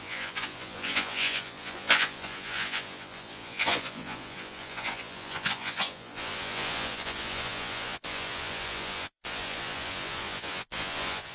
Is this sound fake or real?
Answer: fake